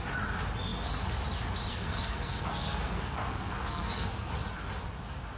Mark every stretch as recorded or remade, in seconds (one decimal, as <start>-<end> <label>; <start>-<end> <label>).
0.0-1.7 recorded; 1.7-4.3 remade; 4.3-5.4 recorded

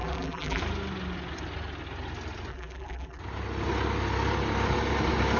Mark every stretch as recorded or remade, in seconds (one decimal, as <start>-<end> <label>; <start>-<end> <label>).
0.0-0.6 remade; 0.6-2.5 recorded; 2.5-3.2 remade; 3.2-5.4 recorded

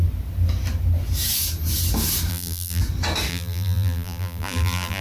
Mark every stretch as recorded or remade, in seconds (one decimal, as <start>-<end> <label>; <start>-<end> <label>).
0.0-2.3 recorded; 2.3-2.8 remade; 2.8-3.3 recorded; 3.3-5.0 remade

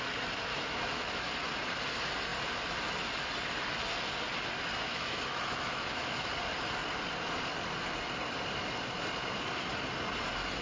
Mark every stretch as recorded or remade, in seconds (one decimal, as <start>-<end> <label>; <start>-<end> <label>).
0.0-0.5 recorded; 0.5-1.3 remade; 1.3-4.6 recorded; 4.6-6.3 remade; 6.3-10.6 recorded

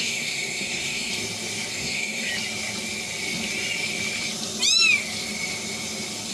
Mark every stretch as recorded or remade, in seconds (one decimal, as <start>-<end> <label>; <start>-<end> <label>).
0.0-1.1 remade; 1.1-1.7 recorded; 1.7-2.3 remade; 2.3-6.3 recorded

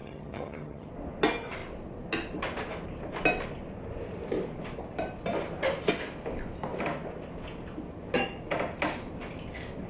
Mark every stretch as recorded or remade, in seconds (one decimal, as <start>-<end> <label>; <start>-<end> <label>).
0.0-0.9 remade; 0.9-9.9 recorded

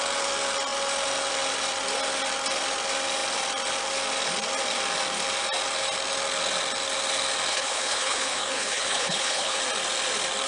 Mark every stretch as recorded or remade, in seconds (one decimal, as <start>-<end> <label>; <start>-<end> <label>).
0.0-7.5 recorded; 7.5-9.6 remade; 9.6-10.5 recorded